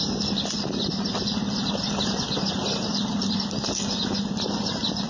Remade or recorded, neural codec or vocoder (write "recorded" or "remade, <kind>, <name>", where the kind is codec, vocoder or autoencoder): recorded